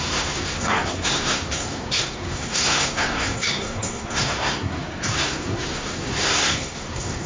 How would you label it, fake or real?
fake